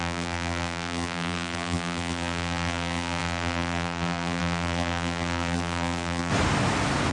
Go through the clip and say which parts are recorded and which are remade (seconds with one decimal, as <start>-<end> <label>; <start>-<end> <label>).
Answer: 0.0-6.3 remade; 6.3-7.1 recorded